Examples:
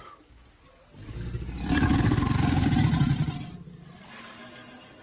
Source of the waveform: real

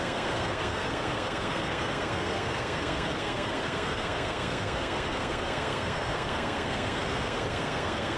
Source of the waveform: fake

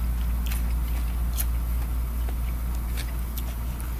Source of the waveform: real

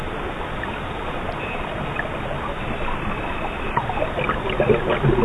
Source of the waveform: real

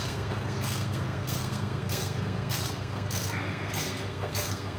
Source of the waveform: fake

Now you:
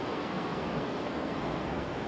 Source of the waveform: fake